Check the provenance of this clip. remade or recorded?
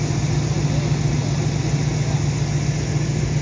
recorded